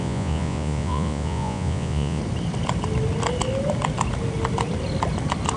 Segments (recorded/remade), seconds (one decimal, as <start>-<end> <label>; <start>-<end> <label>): 0.0-2.2 remade; 2.2-5.6 recorded